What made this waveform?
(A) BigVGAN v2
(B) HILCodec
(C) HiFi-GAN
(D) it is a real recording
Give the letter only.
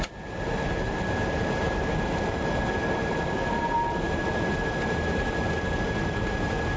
D